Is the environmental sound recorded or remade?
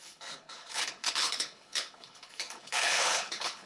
remade